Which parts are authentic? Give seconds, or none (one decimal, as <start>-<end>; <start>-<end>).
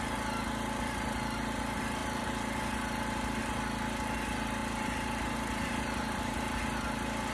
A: 0.0-2.0; 3.3-4.6; 6.6-7.3